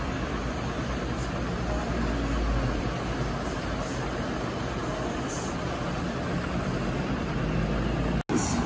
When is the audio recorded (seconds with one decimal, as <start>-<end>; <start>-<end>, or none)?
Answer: 0.0-8.7

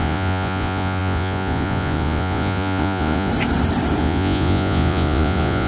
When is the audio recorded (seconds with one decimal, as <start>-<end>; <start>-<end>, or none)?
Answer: 3.3-4.0